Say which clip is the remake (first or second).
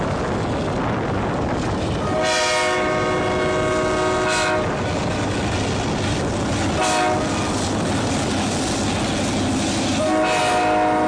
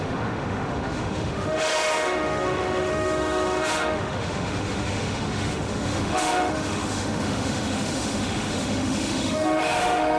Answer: second